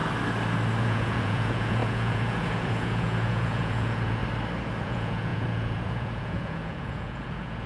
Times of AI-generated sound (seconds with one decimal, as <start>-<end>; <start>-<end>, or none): 0.8-4.2; 4.8-7.7